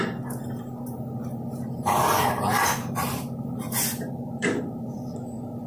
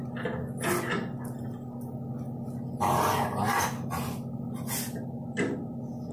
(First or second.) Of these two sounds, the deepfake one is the first